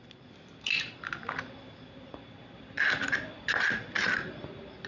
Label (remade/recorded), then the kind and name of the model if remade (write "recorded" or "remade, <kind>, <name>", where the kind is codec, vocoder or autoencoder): recorded